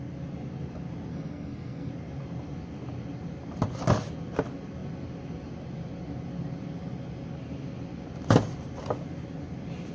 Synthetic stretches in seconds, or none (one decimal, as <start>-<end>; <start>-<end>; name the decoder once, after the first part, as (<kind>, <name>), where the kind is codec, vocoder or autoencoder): 1.1-1.9 (codec, SNAC)